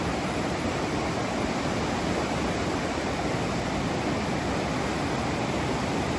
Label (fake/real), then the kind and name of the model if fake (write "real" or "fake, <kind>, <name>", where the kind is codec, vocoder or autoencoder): real